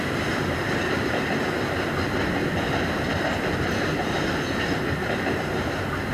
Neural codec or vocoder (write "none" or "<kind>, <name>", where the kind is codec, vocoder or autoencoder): none